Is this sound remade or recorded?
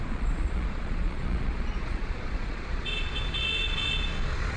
remade